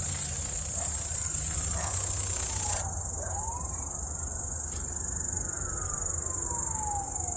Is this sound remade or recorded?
recorded